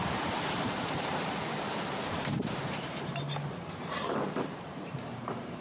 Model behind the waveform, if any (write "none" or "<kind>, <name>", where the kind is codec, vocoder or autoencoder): vocoder, BigVGAN v2